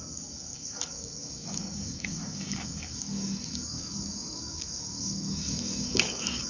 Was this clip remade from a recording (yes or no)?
yes